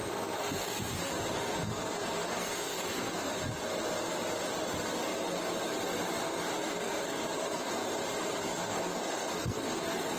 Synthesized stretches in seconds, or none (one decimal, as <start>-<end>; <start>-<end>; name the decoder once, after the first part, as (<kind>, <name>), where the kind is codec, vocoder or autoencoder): 0.0-1.1 (codec, SNAC); 1.6-3.3; 6.2-7.7; 8.5-10.2